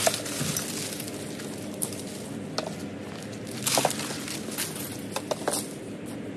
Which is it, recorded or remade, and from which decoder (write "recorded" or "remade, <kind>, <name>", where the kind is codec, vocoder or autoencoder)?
recorded